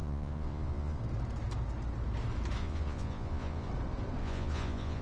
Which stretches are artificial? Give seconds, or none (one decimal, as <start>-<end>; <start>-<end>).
0.0-1.0; 2.6-3.7; 4.2-5.0